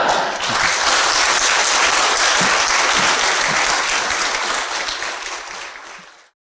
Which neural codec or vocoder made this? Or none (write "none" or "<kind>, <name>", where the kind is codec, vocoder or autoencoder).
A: none